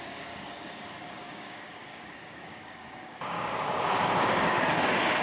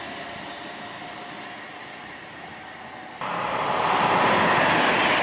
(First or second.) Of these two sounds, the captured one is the second